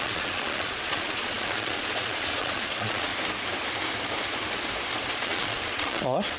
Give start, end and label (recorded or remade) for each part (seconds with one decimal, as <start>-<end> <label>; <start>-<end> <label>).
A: 0.0-3.1 remade; 3.1-5.1 recorded; 5.1-6.4 remade